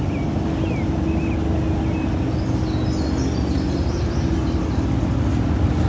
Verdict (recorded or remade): recorded